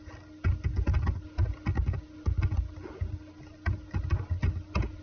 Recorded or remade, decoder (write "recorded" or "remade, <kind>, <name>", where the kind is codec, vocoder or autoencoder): recorded